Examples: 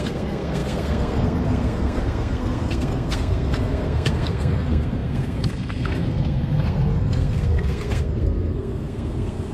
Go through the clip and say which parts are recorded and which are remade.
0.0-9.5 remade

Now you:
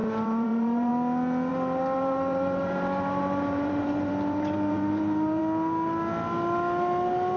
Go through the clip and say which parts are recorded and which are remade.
0.0-0.9 remade; 0.9-1.5 recorded; 1.5-5.4 remade; 5.4-7.4 recorded

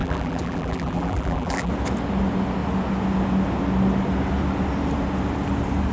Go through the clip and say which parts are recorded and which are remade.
0.0-1.7 remade; 1.7-5.9 recorded